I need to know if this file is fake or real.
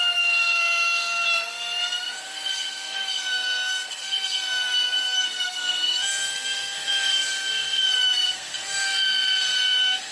fake